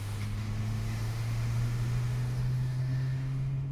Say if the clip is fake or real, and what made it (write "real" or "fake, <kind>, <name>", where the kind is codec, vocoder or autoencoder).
fake, autoencoder, DAC-VAE